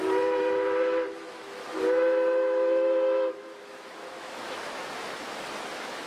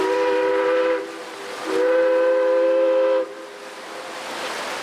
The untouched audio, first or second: second